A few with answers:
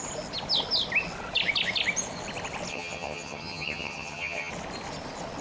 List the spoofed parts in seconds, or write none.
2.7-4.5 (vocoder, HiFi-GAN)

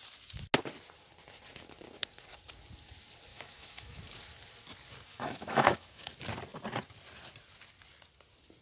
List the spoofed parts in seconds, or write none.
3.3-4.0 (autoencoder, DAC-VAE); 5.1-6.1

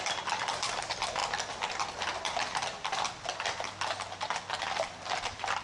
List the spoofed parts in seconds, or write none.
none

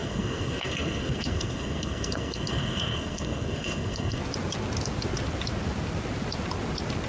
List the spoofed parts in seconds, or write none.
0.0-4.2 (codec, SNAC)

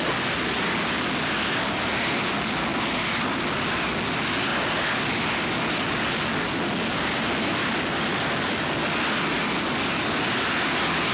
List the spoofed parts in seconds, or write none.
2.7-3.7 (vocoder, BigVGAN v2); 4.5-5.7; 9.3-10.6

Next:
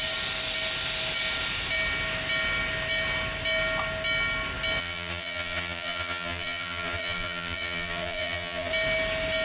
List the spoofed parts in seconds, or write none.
4.8-8.7 (vocoder, BigVGAN v2)